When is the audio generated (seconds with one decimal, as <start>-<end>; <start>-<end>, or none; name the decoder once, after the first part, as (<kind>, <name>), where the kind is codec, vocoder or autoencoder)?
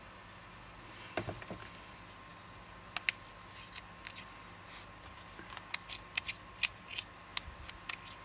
none